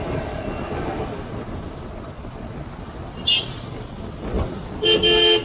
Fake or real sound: real